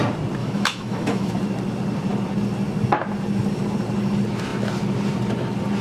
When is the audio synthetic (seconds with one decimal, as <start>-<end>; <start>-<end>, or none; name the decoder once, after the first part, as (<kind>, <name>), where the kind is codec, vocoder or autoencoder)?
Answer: 0.4-1.3 (autoencoder, DAC-VAE)